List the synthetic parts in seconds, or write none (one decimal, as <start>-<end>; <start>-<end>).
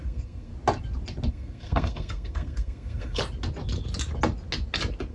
0.0-0.5; 1.3-3.2